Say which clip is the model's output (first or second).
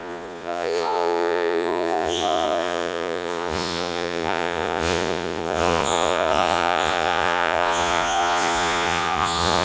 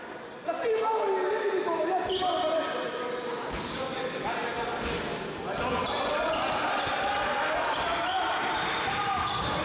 first